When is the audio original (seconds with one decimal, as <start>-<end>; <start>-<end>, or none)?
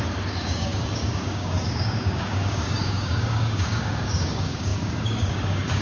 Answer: none